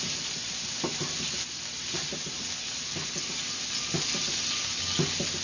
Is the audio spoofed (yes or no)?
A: no